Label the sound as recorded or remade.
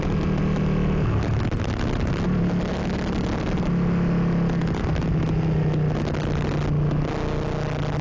recorded